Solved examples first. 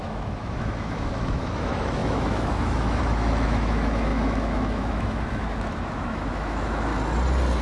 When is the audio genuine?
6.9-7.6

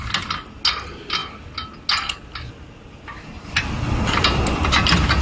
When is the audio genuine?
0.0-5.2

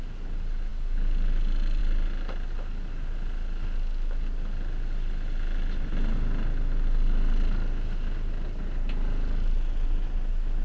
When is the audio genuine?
0.0-10.6

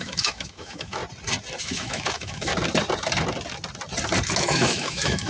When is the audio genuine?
1.0-1.6; 2.5-4.4

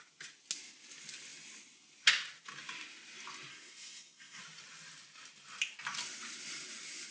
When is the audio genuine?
0.0-3.5; 4.4-7.1

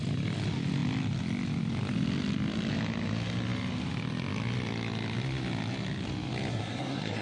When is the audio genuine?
0.0-6.5

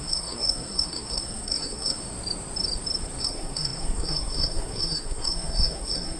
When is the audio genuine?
2.0-3.2